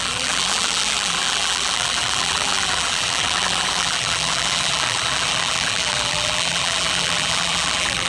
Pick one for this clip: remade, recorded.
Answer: remade